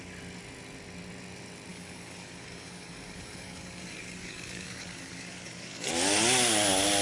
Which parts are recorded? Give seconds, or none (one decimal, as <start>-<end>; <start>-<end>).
0.0-1.7; 5.9-7.0